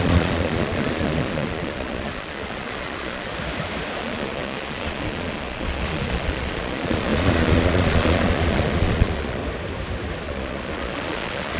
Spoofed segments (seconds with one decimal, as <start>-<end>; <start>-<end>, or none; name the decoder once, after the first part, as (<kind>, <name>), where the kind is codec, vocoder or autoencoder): 0.0-3.3 (vocoder, Vocos); 4.0-9.4; 10.2-11.6